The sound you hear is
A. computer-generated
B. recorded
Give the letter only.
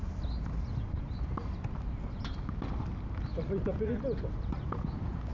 B